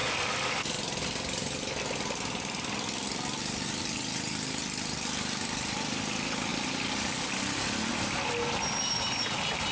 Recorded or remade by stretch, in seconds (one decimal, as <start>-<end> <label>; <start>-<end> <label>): 0.0-9.7 recorded